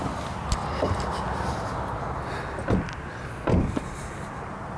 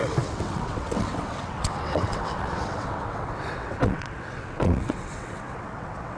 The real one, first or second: first